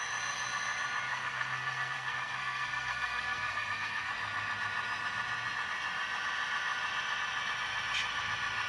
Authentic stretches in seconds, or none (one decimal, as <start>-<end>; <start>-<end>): 0.0-1.1; 4.1-8.7